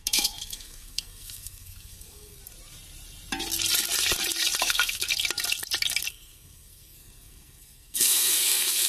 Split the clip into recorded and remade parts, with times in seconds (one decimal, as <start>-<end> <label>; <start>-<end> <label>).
0.0-2.4 remade; 2.4-4.6 recorded; 4.6-5.1 remade; 5.1-6.1 recorded; 6.1-8.9 remade